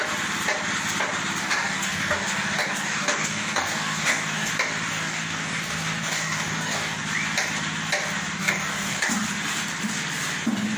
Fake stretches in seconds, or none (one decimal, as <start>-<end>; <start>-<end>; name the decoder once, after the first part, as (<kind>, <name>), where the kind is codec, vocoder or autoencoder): 1.4-4.5 (codec, DAC); 4.9-7.0; 8.4-9.1

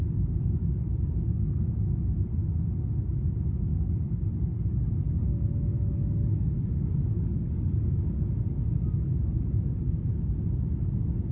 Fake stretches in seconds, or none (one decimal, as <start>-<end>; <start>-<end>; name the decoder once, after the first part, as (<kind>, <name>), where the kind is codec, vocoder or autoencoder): 0.6-2.2 (codec, DAC); 5.7-8.2

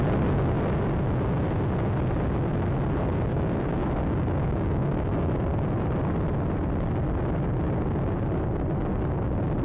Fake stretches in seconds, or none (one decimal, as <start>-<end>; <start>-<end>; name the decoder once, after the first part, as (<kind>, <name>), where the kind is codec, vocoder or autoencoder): 3.3-5.3 (codec, DAC)

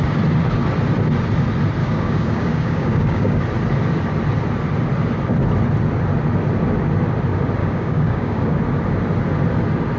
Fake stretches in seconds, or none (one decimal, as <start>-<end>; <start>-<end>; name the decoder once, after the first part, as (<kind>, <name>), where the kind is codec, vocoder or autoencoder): 1.8-3.4 (codec, DAC); 7.6-8.6

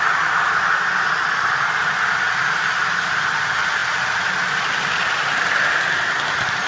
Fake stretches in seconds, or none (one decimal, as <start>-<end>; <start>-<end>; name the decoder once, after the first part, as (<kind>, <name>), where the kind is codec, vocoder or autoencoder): none